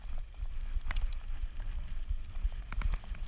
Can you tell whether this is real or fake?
real